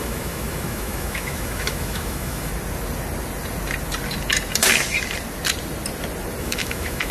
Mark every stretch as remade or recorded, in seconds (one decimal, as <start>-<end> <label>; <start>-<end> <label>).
0.0-2.5 remade; 2.5-6.4 recorded; 6.4-7.1 remade